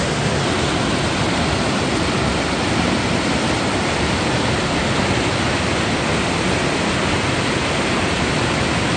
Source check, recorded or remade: recorded